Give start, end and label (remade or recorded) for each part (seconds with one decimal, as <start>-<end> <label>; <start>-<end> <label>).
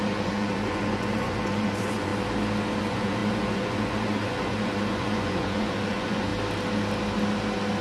0.0-2.1 remade; 2.1-2.8 recorded; 2.8-6.3 remade; 6.3-7.8 recorded